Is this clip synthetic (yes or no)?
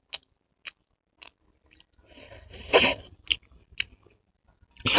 no